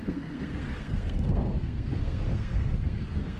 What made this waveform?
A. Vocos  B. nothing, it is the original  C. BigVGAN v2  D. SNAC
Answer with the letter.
D